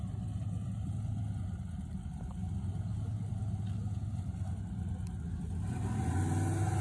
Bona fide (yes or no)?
yes